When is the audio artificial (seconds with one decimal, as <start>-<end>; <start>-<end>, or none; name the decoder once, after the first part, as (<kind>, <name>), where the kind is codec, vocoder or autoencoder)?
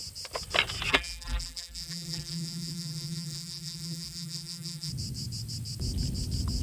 0.9-4.9 (vocoder, BigVGAN v2)